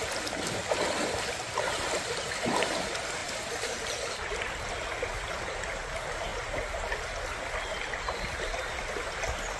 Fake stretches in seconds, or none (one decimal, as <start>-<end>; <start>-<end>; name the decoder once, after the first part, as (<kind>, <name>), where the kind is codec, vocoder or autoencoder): none

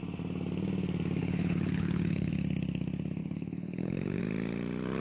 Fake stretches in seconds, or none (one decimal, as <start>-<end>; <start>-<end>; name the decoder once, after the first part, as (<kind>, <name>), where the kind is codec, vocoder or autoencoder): 1.2-2.3 (codec, HILCodec); 3.2-4.2

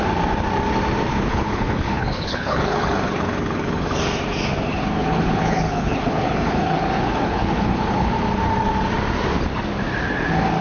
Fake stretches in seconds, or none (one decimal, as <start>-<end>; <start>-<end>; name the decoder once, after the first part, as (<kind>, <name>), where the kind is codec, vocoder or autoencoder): 1.1-4.0 (codec, HILCodec); 4.7-8.1

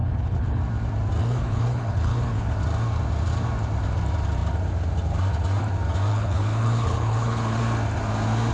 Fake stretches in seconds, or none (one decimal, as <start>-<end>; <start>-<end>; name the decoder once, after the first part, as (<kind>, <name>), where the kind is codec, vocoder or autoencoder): 0.0-0.6 (codec, HILCodec); 1.2-2.5; 6.1-7.6

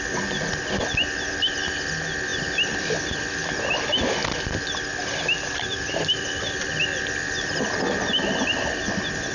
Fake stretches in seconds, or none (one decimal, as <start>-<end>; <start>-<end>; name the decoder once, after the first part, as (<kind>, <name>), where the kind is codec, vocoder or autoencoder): none

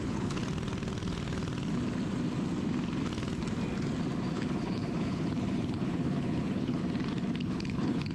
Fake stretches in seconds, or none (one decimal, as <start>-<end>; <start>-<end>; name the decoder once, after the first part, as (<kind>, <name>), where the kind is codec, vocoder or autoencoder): 0.0-0.4 (codec, HILCodec); 4.3-6.8; 7.4-8.1

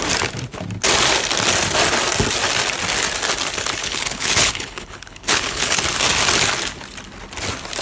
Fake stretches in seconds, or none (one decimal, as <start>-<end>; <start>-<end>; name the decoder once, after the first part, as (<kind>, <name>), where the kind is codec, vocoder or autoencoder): 3.8-5.8 (codec, HILCodec)

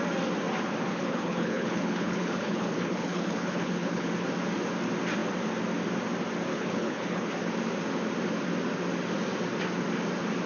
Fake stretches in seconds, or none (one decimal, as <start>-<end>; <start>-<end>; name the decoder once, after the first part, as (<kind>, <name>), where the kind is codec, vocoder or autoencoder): 0.9-4.1 (codec, HILCodec); 6.5-7.3